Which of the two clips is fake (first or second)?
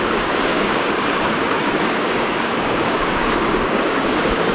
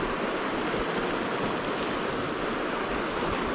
first